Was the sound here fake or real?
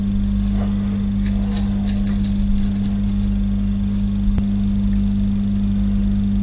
real